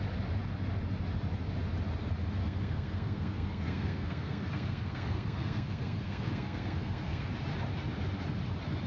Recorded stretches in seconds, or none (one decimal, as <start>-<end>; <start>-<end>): 0.0-2.4; 7.3-8.9